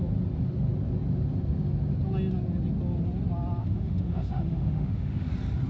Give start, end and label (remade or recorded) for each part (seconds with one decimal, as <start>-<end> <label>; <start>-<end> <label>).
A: 0.0-3.6 recorded; 3.6-5.3 remade; 5.3-5.7 recorded

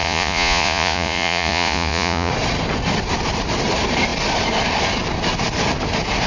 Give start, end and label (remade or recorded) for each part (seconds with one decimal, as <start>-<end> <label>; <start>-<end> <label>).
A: 0.0-2.3 remade; 2.3-6.3 recorded

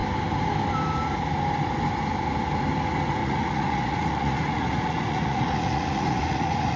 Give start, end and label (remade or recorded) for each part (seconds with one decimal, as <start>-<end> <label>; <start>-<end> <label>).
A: 0.0-3.2 recorded; 3.2-6.8 remade

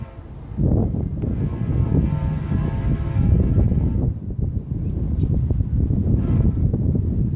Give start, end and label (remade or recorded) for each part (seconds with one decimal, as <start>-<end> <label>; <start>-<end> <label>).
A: 0.0-7.4 recorded

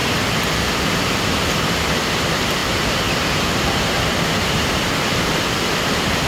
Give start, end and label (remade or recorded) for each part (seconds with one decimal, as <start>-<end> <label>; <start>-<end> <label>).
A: 0.0-2.6 remade; 2.6-4.4 recorded; 4.4-6.3 remade

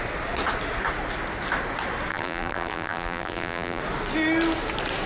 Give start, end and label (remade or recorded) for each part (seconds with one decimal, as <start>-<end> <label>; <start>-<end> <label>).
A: 0.0-2.1 recorded; 2.1-3.8 remade; 3.8-5.1 recorded

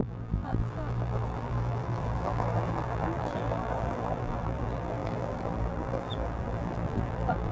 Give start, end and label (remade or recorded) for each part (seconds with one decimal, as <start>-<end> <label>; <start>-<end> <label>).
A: 0.0-7.5 remade

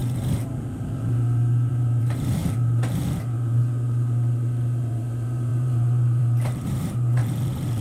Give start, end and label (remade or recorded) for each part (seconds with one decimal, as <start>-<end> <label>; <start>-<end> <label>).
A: 0.0-1.7 recorded; 1.7-2.4 remade; 2.4-4.9 recorded; 4.9-7.2 remade; 7.2-7.8 recorded